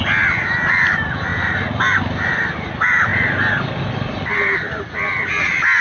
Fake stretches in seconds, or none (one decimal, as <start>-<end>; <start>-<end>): none